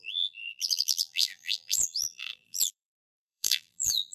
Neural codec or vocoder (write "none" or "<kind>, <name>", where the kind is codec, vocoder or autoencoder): vocoder, BigVGAN v2